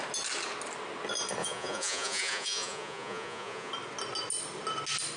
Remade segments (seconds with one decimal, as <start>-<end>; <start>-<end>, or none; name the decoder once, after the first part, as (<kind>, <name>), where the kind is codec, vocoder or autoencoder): 1.4-3.7 (vocoder, Vocos)